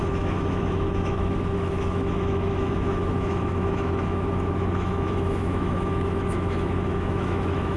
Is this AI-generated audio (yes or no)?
yes